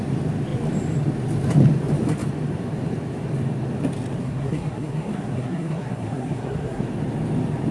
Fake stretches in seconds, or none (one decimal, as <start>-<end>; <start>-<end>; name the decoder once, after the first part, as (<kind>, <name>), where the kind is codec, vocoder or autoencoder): 4.2-6.8 (codec, SNAC)